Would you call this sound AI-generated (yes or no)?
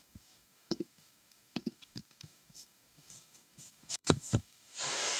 yes